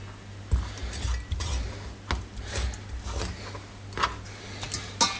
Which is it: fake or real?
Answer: real